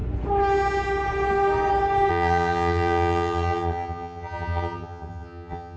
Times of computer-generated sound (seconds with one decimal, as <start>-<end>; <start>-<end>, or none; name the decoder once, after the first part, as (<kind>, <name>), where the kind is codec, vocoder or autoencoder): 2.1-5.8 (vocoder, HiFi-GAN)